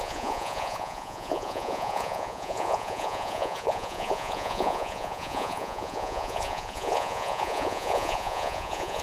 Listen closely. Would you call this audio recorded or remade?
remade